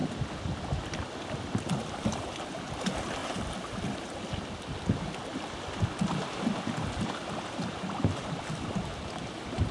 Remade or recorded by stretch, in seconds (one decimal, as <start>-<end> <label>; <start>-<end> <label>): 0.0-9.7 recorded

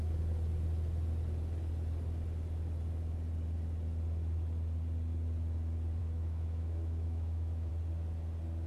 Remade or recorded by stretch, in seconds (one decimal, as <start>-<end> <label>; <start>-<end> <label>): 0.0-6.0 recorded; 6.0-7.7 remade; 7.7-8.7 recorded

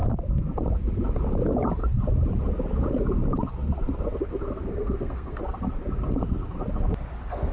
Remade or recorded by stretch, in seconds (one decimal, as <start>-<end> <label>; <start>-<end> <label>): 0.0-4.7 recorded; 4.7-5.4 remade; 5.4-7.5 recorded

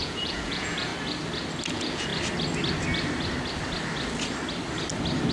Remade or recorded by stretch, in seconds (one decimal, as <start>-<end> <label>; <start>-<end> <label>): 0.0-0.9 remade; 0.9-1.7 recorded; 1.7-2.1 remade; 2.1-5.3 recorded